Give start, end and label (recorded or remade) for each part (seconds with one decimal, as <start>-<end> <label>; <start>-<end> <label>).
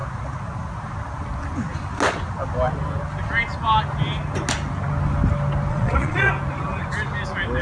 0.0-5.7 recorded; 5.7-6.3 remade; 6.3-7.6 recorded